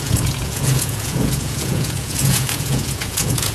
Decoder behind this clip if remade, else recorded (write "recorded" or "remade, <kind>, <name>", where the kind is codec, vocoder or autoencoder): remade, vocoder, Vocos